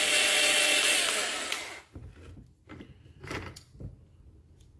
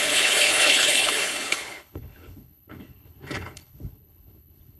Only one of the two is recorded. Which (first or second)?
first